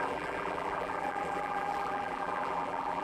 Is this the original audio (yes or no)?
no